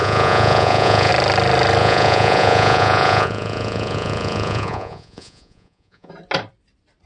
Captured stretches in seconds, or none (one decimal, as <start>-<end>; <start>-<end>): 1.1-1.8; 6.1-7.1